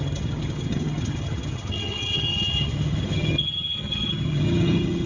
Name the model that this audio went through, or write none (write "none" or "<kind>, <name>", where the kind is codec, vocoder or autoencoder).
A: vocoder, HiFi-GAN